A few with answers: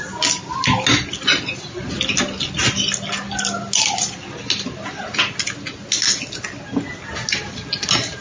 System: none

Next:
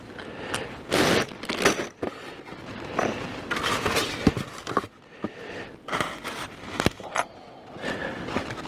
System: none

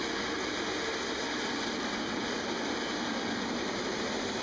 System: none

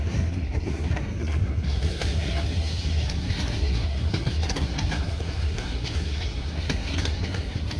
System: codec, SNAC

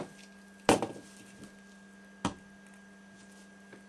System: none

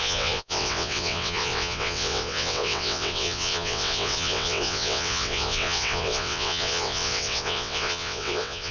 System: vocoder, WaveNeXt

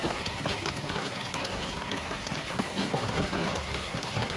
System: codec, SNAC